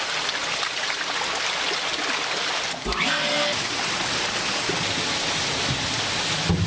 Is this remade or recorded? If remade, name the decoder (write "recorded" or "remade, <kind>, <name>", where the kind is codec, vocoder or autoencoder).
recorded